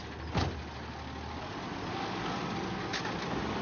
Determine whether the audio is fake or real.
real